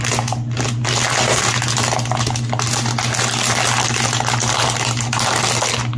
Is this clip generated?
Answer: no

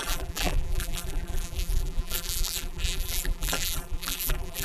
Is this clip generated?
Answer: yes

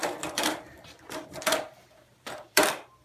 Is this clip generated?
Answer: yes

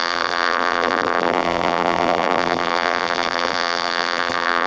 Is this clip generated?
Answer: yes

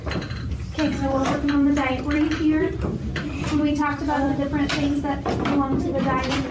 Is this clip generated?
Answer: yes